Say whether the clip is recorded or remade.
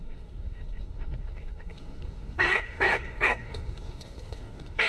remade